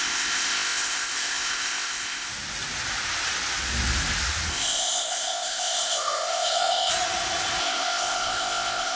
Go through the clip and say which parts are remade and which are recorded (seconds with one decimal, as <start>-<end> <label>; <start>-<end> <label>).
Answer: 0.0-2.3 remade; 2.3-4.5 recorded; 4.5-6.9 remade; 6.9-7.6 recorded; 7.6-9.0 remade